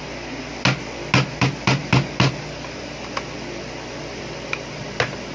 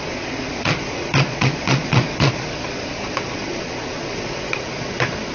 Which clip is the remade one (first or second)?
second